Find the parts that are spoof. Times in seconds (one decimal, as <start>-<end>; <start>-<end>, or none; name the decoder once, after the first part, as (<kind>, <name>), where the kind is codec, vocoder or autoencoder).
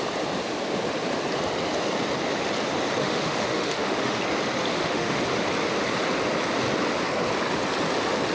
3.0-4.2 (autoencoder, DAC-VAE); 4.7-5.2